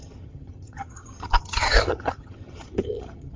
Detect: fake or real fake